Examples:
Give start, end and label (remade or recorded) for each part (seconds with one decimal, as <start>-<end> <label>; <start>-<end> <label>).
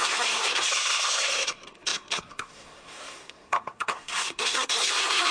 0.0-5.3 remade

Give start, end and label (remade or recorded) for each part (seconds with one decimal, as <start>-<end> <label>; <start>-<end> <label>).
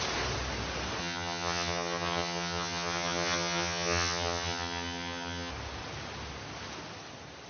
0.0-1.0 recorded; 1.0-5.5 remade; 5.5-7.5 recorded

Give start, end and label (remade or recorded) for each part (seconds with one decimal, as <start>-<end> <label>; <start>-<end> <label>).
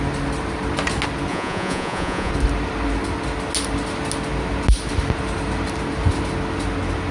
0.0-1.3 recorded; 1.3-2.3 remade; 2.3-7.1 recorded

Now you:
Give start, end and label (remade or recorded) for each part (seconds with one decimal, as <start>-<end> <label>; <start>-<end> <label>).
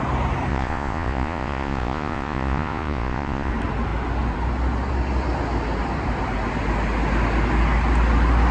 0.0-0.5 recorded; 0.5-3.5 remade; 3.5-8.5 recorded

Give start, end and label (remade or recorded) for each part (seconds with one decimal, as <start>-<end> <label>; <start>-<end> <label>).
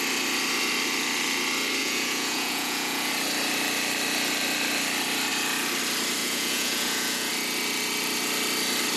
0.0-1.8 recorded; 1.8-3.1 remade; 3.1-6.2 recorded; 6.2-7.3 remade; 7.3-9.0 recorded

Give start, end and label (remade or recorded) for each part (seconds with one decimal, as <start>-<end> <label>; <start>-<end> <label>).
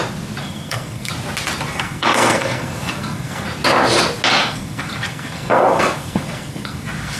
0.0-0.4 recorded; 0.4-1.1 remade; 1.1-1.7 recorded; 1.7-3.5 remade; 3.5-4.4 recorded; 4.4-7.2 remade